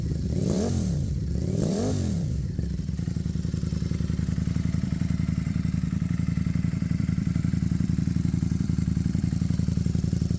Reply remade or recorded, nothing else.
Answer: remade